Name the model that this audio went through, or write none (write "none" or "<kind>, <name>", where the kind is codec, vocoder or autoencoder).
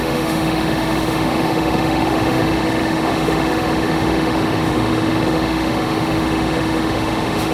autoencoder, DAC-VAE